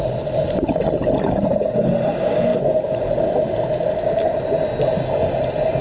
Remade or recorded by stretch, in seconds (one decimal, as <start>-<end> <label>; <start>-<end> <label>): 0.0-5.8 recorded